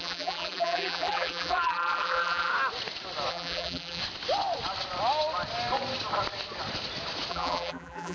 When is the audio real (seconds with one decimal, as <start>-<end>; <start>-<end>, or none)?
2.5-3.3; 4.0-7.3